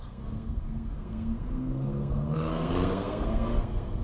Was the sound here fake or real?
fake